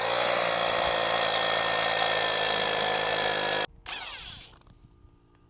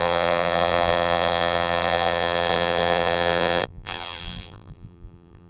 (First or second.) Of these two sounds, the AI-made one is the second